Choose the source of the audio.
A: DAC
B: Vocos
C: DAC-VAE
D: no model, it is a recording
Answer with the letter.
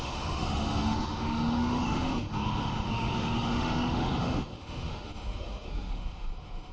C